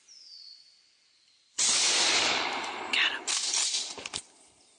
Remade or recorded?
remade